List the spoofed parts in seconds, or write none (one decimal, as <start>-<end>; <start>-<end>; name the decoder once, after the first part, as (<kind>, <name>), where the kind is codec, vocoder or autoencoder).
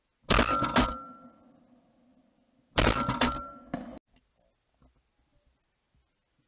none